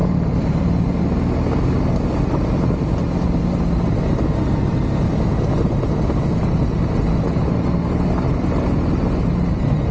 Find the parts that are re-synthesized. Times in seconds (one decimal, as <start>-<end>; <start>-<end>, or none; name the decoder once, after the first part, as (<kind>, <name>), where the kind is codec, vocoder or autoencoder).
0.0-1.0 (vocoder, BigVGAN v2)